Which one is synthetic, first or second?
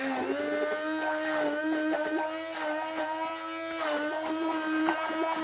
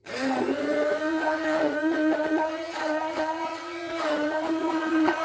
second